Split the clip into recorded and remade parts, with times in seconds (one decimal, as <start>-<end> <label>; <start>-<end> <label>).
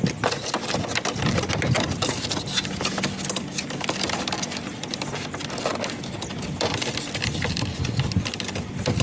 0.0-9.0 recorded